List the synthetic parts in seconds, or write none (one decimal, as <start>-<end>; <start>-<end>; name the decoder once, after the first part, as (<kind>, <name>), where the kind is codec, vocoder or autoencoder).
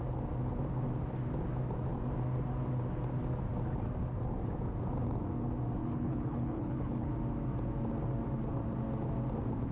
5.8-7.1 (codec, HILCodec)